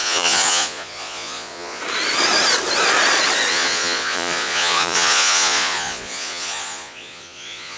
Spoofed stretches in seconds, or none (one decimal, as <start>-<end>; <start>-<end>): 0.0-1.8; 3.5-7.8